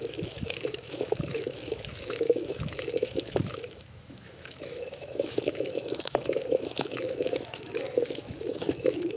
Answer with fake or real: fake